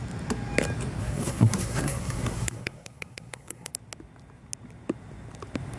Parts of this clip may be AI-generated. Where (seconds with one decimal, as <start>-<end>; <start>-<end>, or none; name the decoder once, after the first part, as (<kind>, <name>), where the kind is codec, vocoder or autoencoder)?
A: 1.0-3.7 (codec, SNAC)